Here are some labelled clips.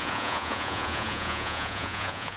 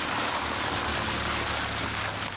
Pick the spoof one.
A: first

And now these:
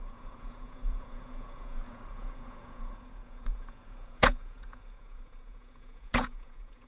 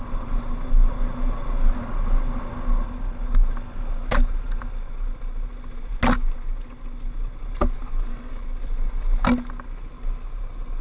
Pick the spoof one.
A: first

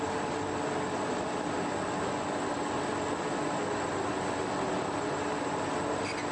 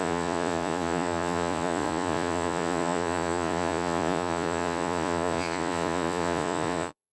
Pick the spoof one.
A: second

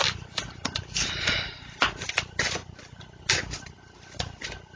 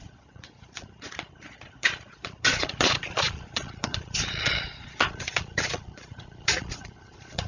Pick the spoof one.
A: second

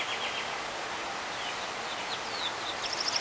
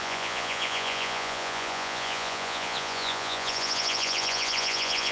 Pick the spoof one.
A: second